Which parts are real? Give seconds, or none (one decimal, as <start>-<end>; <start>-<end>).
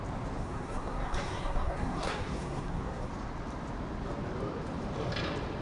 0.0-0.4; 3.1-5.6